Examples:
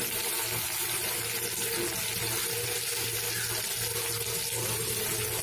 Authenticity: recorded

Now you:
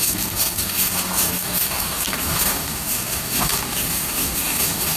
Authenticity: remade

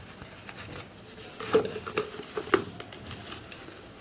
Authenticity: recorded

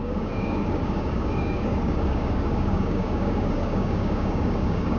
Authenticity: remade